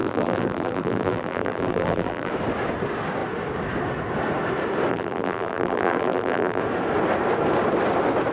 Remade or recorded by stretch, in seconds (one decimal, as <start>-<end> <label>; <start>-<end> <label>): 0.0-2.3 remade; 2.3-4.9 recorded; 4.9-6.6 remade; 6.6-8.3 recorded